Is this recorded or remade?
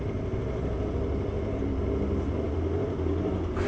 recorded